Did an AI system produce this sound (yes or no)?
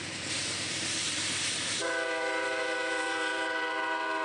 yes